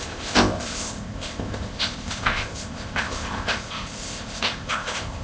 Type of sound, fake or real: fake